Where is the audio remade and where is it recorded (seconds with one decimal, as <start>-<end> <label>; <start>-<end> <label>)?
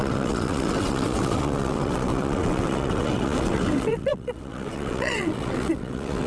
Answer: 0.0-6.3 remade